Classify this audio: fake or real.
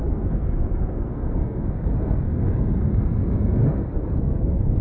fake